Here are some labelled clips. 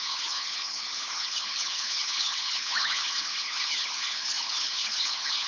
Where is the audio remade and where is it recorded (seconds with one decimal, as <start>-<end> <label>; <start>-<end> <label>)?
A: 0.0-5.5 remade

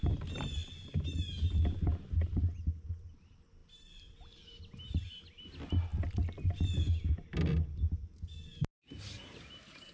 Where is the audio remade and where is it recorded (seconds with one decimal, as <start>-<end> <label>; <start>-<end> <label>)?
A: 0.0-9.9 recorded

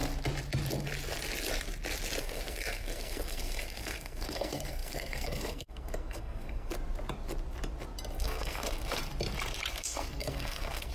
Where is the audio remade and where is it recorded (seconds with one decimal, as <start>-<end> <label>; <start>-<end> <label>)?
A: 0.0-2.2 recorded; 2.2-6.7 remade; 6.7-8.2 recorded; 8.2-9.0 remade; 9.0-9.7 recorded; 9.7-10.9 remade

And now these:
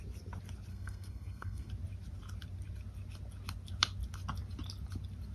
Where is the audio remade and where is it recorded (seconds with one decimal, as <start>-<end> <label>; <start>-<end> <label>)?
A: 0.0-0.7 recorded; 0.7-1.7 remade; 1.7-5.3 recorded

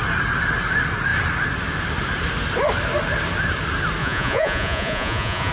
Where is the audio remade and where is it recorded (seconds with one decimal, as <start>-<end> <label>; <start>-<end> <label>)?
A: 0.0-4.0 recorded; 4.0-5.5 remade

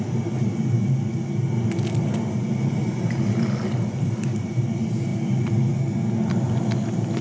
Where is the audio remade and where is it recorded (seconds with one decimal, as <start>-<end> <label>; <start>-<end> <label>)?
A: 0.0-7.2 recorded

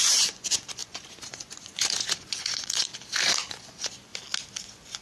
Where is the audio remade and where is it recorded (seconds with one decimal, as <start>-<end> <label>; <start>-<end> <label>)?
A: 0.0-2.9 remade; 2.9-3.5 recorded; 3.5-4.1 remade; 4.1-4.6 recorded; 4.6-5.0 remade

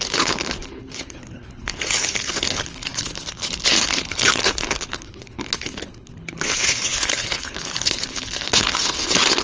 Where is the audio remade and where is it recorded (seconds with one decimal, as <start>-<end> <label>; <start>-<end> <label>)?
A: 0.0-9.4 remade